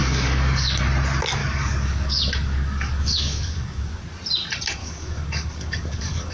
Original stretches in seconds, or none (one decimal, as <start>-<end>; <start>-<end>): 0.8-1.4; 4.0-4.8